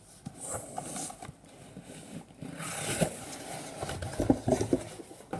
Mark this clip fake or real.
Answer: real